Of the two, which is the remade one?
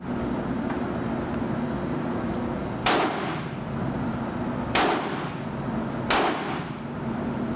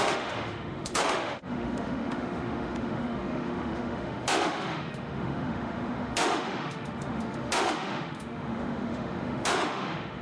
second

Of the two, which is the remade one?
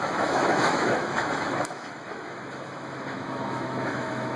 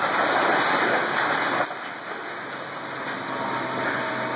first